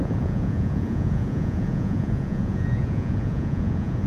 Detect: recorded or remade remade